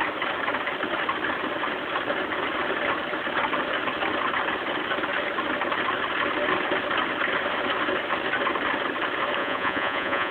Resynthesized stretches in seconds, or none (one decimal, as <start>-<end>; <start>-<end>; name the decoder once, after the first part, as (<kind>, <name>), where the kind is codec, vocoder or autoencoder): 9.4-10.3 (vocoder, Vocos)